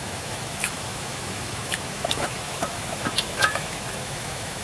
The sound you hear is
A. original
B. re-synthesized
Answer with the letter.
B